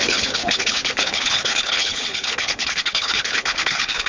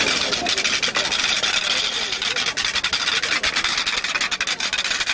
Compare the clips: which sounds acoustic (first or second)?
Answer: second